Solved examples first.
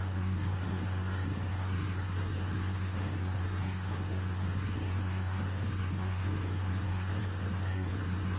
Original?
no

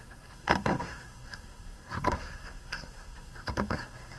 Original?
no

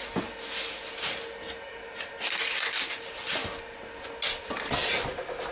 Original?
yes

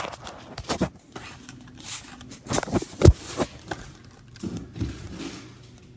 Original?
yes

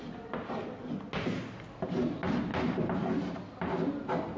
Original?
yes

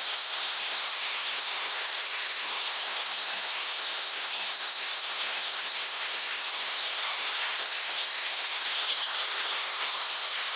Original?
no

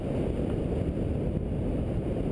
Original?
yes